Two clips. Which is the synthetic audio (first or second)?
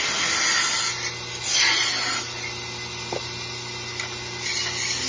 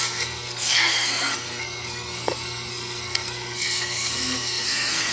second